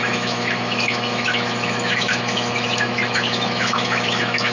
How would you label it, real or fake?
fake